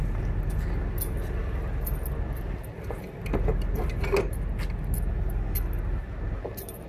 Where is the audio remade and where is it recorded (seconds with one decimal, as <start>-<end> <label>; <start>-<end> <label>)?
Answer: 0.0-6.9 recorded